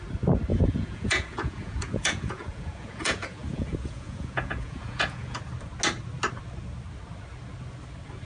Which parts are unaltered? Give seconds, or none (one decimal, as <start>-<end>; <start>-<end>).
0.0-0.5; 5.4-8.2